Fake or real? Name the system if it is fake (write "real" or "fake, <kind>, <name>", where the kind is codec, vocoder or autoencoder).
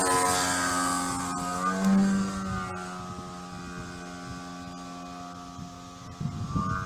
real